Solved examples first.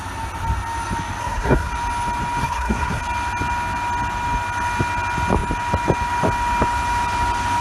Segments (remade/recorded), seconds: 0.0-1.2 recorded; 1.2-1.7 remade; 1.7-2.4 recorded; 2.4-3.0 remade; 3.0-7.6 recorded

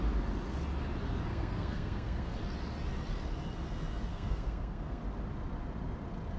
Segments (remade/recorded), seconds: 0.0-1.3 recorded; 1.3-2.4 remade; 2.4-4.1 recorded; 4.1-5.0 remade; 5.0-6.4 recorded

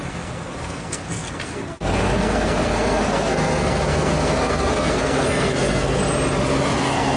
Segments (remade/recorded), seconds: 0.0-6.0 remade; 6.0-6.8 recorded; 6.8-7.2 remade

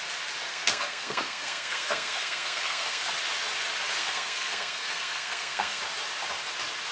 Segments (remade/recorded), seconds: 0.0-0.5 recorded; 0.5-3.1 remade; 3.1-4.0 recorded; 4.0-5.8 remade; 5.8-6.9 recorded

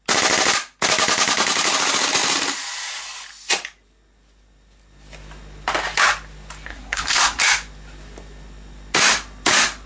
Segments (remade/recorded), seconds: 0.0-6.7 recorded; 6.7-7.4 remade; 7.4-9.9 recorded

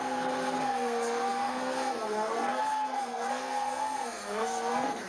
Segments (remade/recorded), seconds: 0.0-5.1 remade